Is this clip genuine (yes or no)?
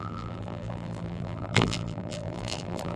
no